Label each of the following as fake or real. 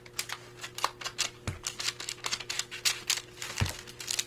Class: real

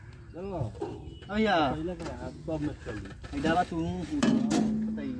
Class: real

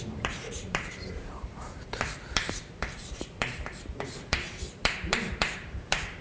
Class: fake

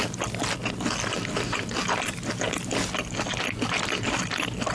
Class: real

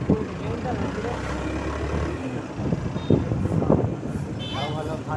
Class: real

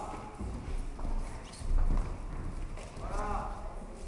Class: real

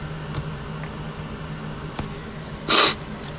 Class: real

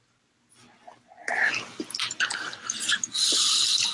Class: real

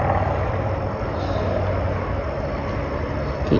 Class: real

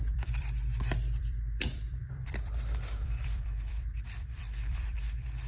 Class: fake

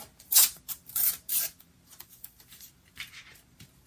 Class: fake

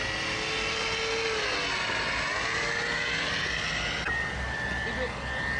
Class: real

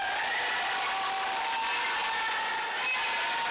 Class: real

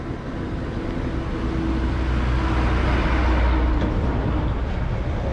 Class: real